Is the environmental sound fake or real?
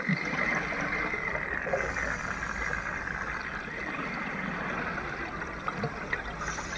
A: real